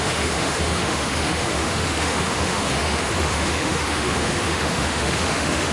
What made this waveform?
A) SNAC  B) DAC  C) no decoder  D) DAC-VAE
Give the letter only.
D